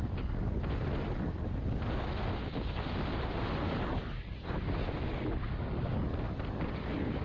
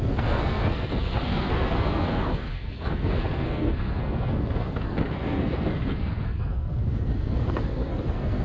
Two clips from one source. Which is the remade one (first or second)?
second